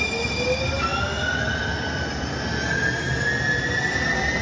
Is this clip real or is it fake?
real